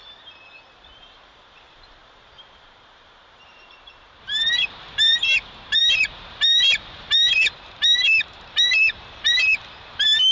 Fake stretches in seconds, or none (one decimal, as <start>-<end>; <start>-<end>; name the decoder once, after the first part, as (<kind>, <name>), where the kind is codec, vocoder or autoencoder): 0.0-10.3 (vocoder, BigVGAN v2)